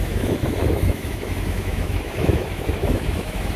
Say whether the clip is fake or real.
fake